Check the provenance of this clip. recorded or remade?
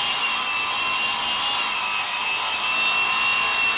recorded